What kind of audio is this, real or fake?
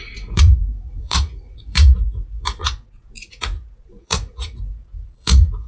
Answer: fake